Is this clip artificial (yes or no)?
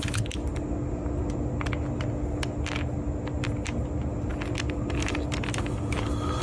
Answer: no